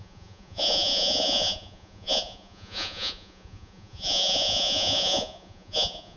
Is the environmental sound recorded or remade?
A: remade